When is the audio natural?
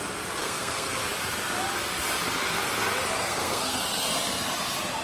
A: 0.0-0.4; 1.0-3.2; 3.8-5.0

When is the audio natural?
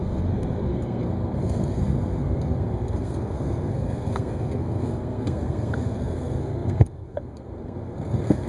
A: none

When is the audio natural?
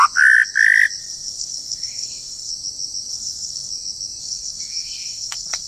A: 0.0-1.0; 2.5-3.1; 3.7-4.2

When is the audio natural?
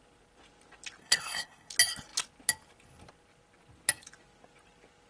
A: 0.0-1.0; 1.7-5.1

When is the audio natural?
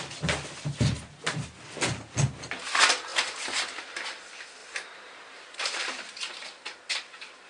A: 0.0-7.5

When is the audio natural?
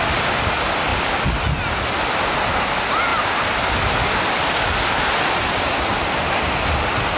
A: 0.0-7.2